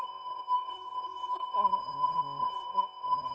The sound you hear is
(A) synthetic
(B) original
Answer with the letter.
A